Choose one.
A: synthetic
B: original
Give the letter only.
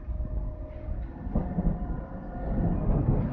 B